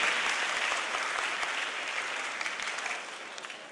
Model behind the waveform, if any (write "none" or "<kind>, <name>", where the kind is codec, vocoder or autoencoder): none